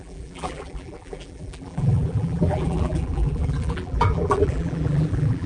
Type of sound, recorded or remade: remade